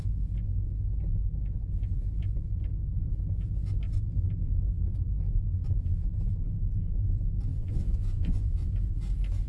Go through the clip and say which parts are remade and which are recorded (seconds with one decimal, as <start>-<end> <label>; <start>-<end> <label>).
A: 0.0-7.5 recorded; 7.5-8.7 remade; 8.7-9.5 recorded